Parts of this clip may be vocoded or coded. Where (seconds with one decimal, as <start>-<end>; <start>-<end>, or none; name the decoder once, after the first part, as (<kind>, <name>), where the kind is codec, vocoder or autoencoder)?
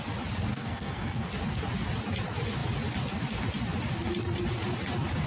0.5-1.3 (codec, SNAC)